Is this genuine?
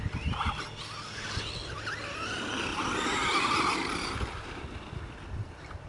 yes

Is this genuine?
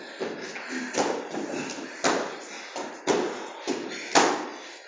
yes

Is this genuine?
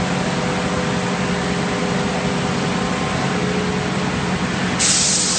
yes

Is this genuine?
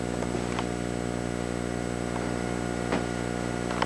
yes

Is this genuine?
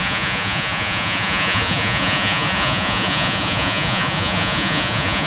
no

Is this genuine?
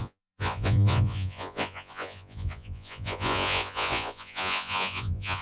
no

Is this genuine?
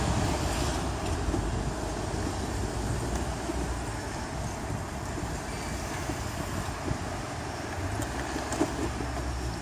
yes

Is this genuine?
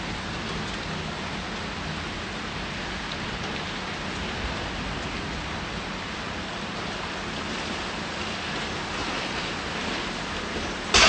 yes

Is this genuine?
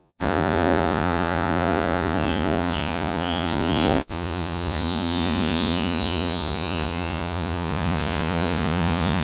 no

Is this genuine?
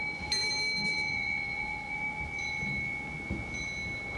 yes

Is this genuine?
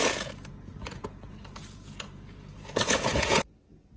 no